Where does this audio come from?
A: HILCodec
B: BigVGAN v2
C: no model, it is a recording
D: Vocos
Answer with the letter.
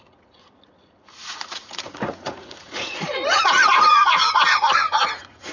D